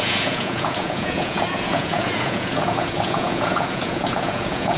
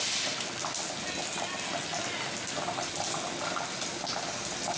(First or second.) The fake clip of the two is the first